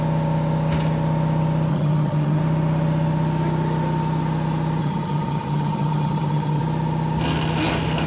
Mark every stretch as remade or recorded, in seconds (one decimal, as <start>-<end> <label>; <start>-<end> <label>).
0.0-1.7 recorded; 1.7-2.4 remade; 2.4-4.8 recorded; 4.8-6.6 remade; 6.6-8.1 recorded